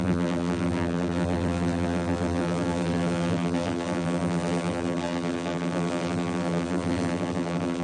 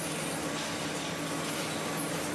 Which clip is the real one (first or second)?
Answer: second